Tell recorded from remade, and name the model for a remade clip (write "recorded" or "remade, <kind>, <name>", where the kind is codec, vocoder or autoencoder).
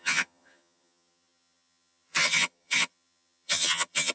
remade, vocoder, HiFi-GAN